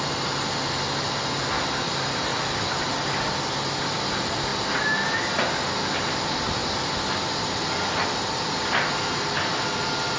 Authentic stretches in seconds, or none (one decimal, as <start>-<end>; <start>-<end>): 0.0-10.2